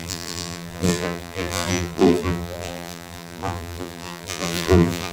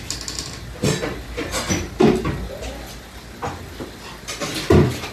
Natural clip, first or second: second